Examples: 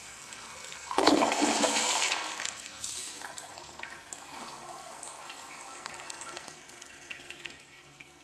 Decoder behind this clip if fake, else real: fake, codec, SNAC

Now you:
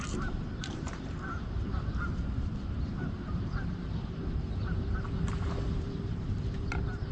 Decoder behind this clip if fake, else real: fake, vocoder, BigVGAN v2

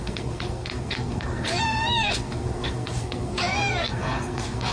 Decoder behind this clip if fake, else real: fake, codec, SNAC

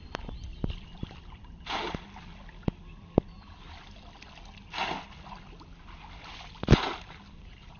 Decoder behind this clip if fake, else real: real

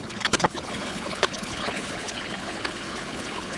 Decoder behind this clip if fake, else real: fake, codec, HILCodec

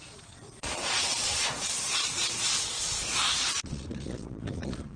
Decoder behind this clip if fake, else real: fake, vocoder, Vocos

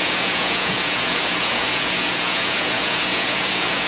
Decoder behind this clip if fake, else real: fake, vocoder, Vocos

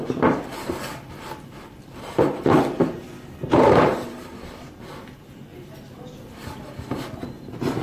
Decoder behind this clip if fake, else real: fake, vocoder, BigVGAN v2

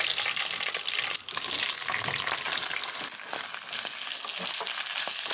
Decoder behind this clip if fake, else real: real